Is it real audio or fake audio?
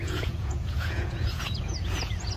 fake